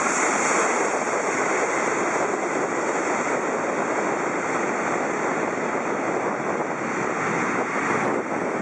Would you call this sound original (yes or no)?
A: yes